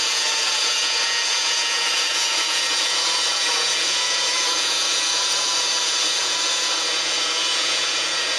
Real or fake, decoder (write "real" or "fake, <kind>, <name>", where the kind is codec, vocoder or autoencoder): fake, vocoder, Vocos